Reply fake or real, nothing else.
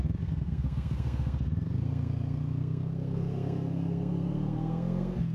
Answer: fake